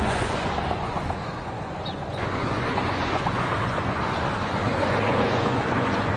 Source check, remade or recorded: remade